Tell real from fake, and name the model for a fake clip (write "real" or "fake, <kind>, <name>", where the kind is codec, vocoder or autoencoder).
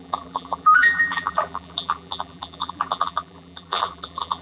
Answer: fake, vocoder, BigVGAN v2